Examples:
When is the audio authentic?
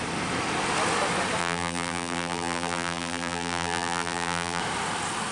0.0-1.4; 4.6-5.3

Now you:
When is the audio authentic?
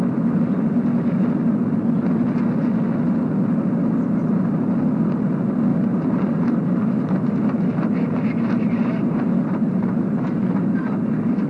0.0-5.7; 10.4-11.5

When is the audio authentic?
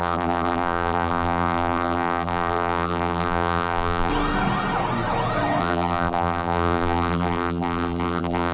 4.1-5.6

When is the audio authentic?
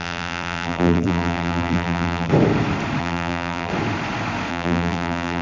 2.3-3.0; 3.7-4.5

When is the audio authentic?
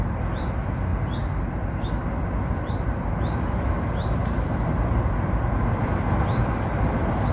0.0-5.8; 6.4-7.3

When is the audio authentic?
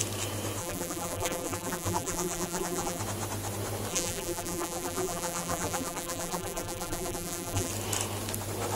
0.0-0.6; 3.0-3.9; 7.7-8.8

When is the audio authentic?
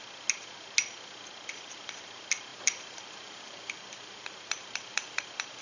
0.0-2.5